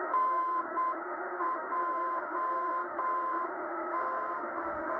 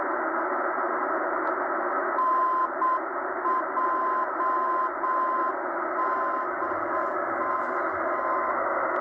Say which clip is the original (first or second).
second